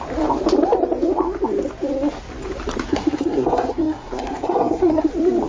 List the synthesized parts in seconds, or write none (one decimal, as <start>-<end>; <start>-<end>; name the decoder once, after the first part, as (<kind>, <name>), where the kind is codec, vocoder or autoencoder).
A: 2.9-5.1 (codec, SNAC)